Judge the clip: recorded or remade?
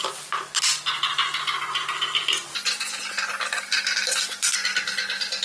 recorded